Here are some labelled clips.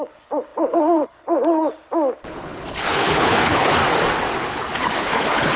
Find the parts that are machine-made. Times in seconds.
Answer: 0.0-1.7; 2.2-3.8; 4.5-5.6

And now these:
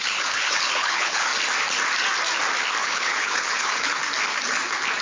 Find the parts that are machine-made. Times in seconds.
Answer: 0.0-1.3; 2.8-4.0